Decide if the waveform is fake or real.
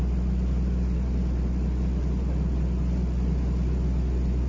real